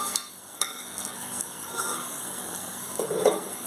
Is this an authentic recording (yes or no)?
no